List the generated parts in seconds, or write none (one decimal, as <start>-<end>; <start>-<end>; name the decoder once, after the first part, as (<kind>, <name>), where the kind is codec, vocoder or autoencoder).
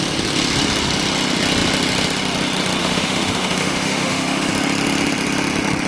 2.8-4.5 (autoencoder, DAC-VAE)